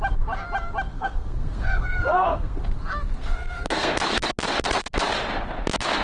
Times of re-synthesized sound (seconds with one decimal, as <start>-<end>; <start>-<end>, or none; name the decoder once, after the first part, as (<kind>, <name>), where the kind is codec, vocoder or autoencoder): 0.9-2.6 (codec, SNAC); 3.2-3.9